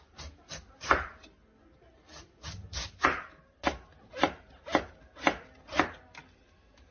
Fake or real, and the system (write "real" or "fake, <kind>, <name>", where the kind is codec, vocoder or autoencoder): real